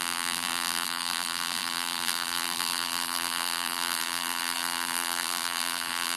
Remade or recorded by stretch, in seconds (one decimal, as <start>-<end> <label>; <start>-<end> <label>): 0.0-6.2 remade